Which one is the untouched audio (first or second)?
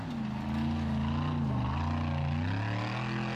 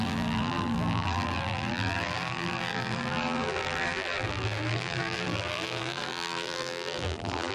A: first